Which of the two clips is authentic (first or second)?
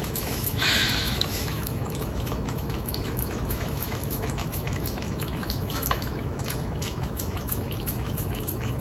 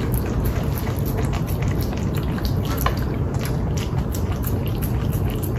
second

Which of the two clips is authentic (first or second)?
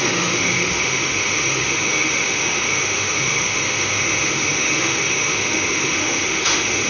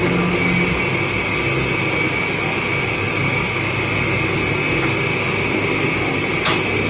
second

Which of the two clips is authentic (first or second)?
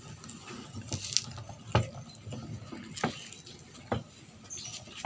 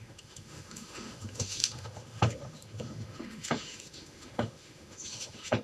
first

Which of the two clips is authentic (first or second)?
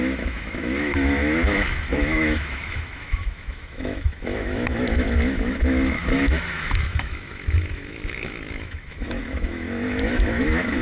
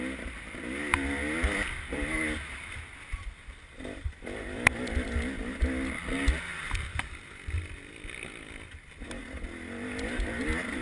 second